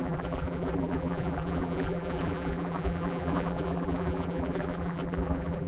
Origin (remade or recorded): remade